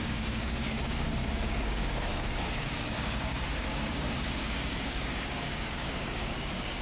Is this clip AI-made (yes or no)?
yes